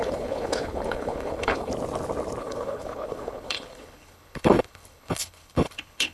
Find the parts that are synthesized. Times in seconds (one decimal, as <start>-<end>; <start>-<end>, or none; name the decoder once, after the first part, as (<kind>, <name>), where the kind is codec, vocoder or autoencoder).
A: 0.0-1.7 (codec, HILCodec); 2.4-6.1

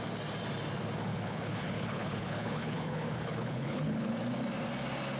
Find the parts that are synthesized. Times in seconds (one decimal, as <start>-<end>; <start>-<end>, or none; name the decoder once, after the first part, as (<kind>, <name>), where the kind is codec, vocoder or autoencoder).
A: 1.1-4.1 (codec, HILCodec)

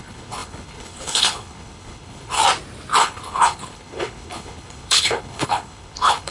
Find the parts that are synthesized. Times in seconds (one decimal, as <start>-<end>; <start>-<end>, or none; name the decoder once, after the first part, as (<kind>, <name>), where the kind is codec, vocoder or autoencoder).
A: 0.0-2.4 (codec, HILCodec); 3.0-6.3